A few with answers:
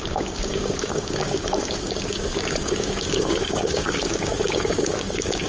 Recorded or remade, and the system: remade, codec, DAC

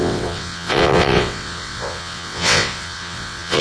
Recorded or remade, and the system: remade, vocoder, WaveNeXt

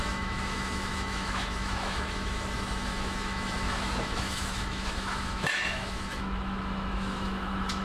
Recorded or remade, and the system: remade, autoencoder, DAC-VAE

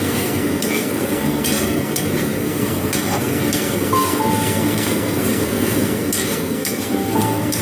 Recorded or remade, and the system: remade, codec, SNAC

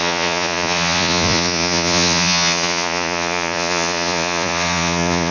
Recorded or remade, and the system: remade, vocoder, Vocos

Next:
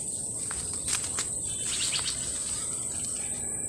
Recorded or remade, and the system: recorded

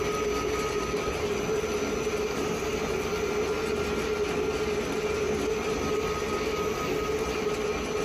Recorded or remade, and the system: recorded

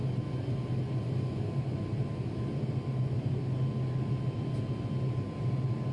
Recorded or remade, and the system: recorded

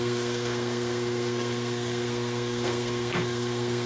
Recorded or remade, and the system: remade, codec, SNAC